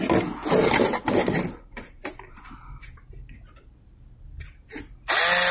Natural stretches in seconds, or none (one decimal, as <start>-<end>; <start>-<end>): 0.0-5.5